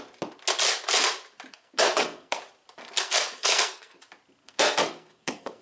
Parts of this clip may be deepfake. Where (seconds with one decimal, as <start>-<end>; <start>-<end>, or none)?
1.5-2.4; 2.8-4.0; 4.4-5.6